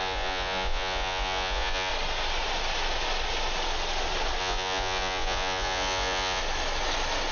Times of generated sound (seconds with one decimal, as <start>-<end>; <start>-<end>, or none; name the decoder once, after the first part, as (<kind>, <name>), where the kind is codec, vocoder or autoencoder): 0.0-1.9 (vocoder, Vocos); 4.4-6.4

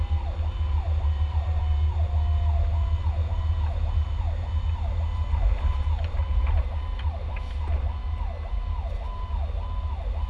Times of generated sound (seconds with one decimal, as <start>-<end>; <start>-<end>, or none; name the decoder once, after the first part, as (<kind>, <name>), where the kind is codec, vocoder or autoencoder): none

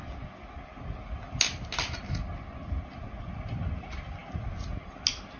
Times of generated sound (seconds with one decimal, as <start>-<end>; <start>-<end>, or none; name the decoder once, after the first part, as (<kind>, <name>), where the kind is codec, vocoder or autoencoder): none

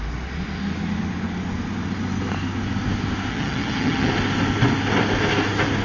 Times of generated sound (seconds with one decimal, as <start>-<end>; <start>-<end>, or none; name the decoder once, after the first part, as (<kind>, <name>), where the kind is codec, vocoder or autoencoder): 3.3-4.1 (vocoder, HiFi-GAN)

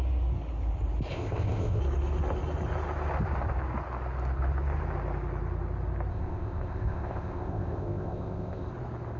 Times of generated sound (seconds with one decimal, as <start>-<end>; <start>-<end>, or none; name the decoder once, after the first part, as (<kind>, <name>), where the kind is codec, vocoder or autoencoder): 1.1-1.8 (codec, ZipCodec); 6.1-8.7

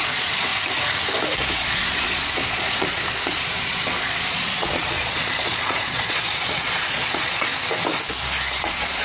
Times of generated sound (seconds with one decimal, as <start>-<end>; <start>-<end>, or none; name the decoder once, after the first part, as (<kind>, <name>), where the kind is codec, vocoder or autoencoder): 0.0-0.5 (vocoder, Vocos); 1.5-7.5; 8.6-9.0

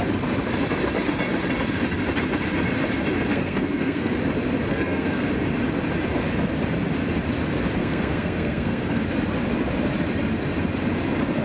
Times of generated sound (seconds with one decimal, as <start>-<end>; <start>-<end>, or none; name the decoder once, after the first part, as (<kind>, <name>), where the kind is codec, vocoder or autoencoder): 3.3-4.1 (codec, SNAC); 4.7-5.3; 7.8-9.0